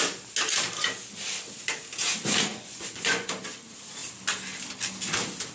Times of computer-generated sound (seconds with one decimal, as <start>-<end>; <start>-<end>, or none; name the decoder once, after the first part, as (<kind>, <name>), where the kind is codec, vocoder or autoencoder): 2.5-3.3 (vocoder, Vocos)